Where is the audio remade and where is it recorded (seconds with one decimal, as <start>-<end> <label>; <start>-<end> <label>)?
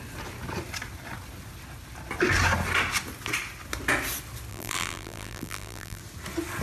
0.0-4.5 recorded; 4.5-6.0 remade; 6.0-6.6 recorded